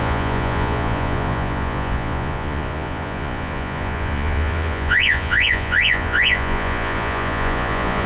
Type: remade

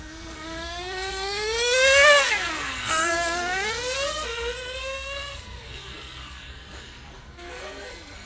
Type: remade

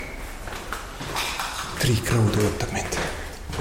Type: remade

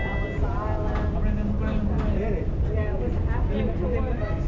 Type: recorded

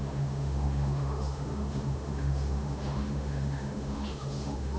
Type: remade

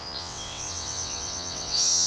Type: remade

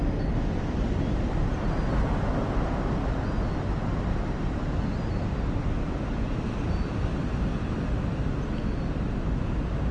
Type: recorded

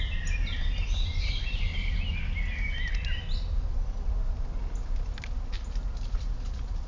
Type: recorded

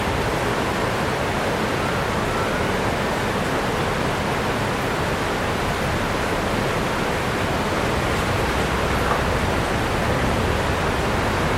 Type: recorded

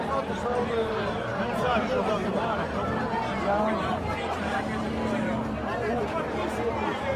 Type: remade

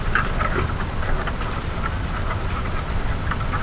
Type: recorded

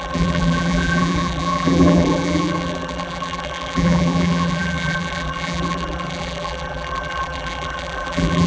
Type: remade